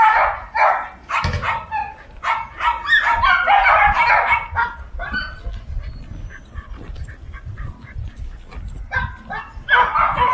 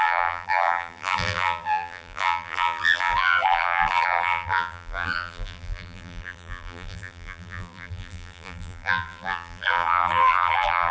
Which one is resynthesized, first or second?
second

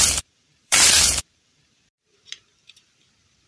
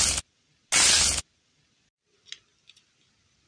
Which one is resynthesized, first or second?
first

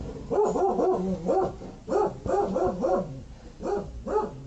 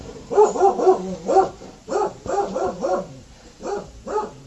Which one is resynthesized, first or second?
second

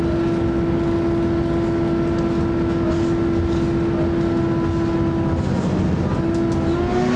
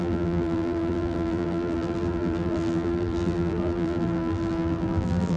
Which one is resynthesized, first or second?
second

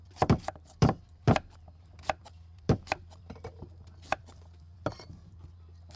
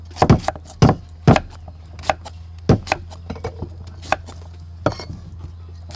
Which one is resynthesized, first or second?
first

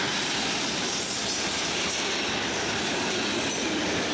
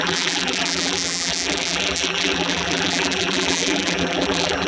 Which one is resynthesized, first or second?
second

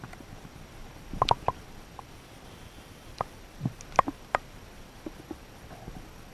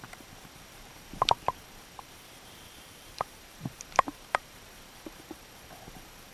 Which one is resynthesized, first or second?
second